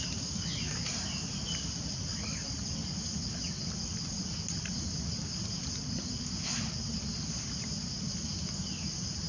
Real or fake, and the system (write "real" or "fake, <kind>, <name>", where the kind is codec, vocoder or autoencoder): real